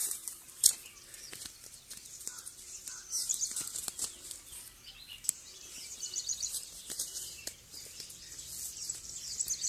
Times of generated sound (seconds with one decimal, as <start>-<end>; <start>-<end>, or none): 0.0-0.9; 5.1-7.9